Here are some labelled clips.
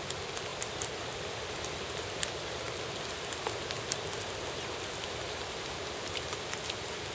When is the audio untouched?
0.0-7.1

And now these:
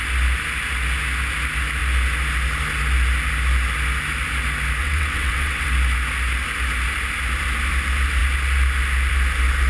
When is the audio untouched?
0.0-4.8; 5.7-9.7

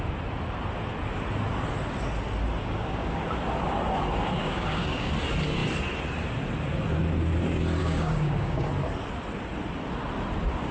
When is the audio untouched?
0.0-2.6; 3.2-4.4; 5.1-7.8; 8.7-10.7